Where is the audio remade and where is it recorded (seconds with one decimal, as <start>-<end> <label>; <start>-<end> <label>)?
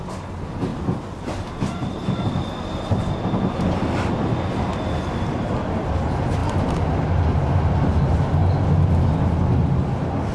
0.0-4.7 recorded; 4.7-5.5 remade; 5.5-10.3 recorded